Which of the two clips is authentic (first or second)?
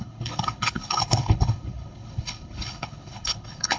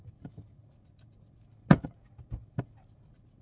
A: second